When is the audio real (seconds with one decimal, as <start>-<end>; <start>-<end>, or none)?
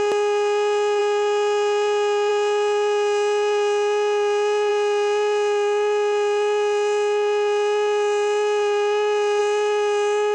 0.0-10.3